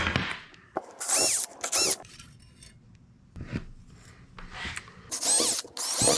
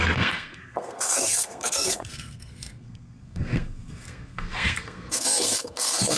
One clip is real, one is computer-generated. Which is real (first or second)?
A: first